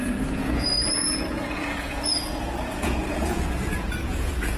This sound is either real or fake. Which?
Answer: fake